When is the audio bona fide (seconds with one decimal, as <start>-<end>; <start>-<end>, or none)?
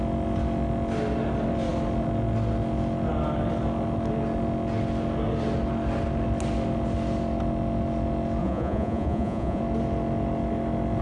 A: 0.0-8.4; 9.6-11.0